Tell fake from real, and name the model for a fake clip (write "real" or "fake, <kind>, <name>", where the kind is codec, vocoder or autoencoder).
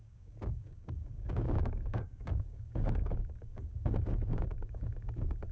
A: fake, codec, DAC